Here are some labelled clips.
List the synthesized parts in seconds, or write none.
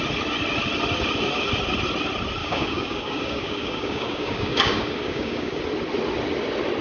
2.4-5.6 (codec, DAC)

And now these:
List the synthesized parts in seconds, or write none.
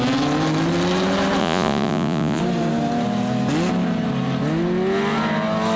1.4-2.4 (vocoder, Vocos)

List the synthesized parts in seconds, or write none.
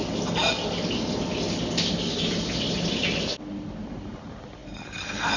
none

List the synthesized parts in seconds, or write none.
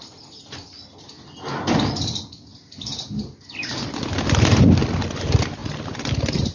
none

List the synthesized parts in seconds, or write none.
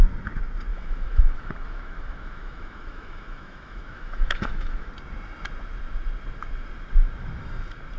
0.7-4.9 (autoencoder, DAC-VAE)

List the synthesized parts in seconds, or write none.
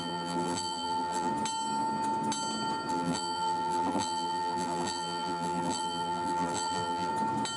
0.0-1.3 (vocoder, BigVGAN v2); 2.9-7.1